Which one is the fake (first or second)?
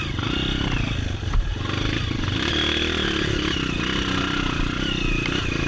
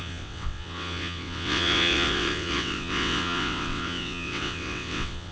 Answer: second